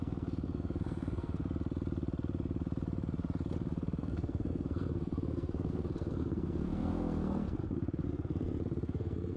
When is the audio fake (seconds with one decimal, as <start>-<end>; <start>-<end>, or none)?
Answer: 0.0-1.4; 4.0-9.4